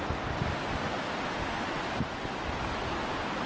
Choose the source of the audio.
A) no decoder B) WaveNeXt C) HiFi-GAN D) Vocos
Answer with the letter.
A